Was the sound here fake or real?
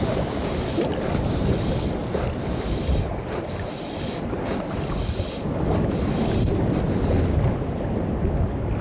real